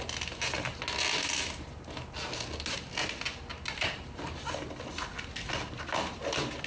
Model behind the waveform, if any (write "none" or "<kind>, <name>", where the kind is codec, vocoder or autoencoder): none